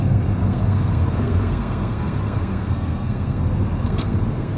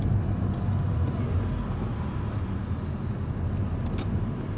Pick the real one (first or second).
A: second